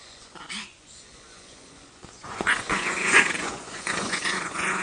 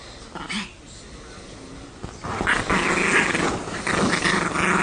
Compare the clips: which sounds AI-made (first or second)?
first